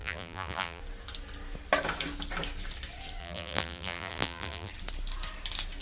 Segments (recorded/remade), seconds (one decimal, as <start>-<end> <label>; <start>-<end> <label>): 0.0-0.8 remade; 0.8-3.2 recorded; 3.2-4.7 remade; 4.7-5.8 recorded